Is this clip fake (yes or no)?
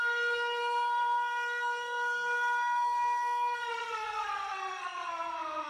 yes